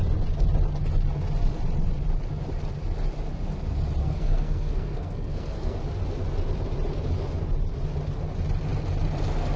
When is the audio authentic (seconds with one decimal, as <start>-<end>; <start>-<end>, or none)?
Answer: 0.0-4.0; 5.8-9.6

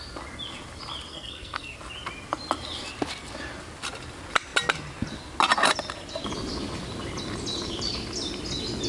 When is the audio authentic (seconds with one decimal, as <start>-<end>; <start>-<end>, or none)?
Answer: 0.0-1.1; 1.8-8.9

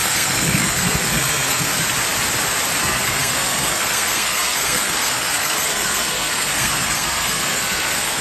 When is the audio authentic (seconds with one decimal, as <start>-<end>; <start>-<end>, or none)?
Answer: 1.7-2.8

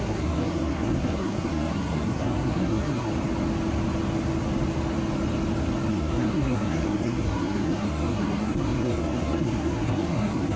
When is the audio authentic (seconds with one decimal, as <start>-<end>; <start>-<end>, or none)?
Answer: 3.1-5.9

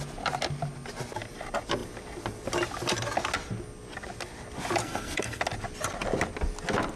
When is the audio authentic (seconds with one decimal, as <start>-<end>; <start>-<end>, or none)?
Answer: 0.0-4.8; 5.4-7.0

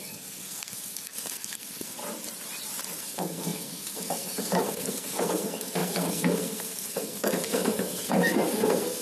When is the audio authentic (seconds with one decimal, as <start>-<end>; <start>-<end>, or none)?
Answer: 2.0-3.0